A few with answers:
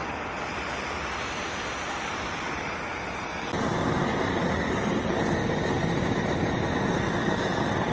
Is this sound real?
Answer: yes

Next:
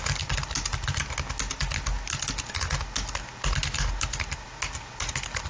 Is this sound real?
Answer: yes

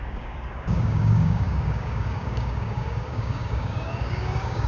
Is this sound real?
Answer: no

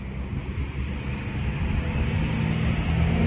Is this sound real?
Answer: yes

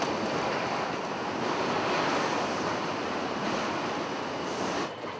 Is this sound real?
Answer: yes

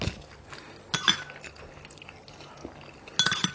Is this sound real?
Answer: yes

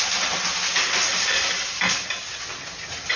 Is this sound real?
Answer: yes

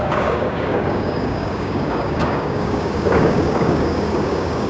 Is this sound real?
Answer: no